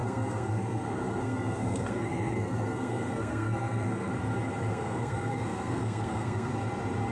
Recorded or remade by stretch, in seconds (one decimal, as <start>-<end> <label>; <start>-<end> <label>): 0.0-4.1 remade; 4.1-4.7 recorded; 4.7-6.5 remade; 6.5-7.1 recorded